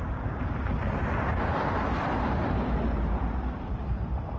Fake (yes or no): no